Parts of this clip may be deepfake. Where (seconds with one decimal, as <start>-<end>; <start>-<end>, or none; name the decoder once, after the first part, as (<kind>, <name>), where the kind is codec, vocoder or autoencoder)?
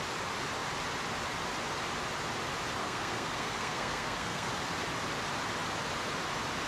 2.8-4.5 (codec, SNAC)